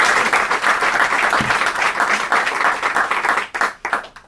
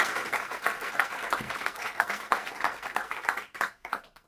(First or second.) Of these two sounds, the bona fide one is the first